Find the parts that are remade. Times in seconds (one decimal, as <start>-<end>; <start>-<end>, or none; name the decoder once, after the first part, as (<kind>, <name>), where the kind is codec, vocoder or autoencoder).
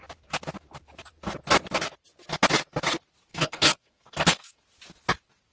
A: 3.3-4.6 (codec, SNAC)